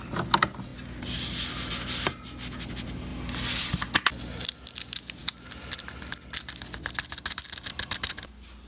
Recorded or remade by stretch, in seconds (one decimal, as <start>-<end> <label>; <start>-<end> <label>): 0.0-8.7 recorded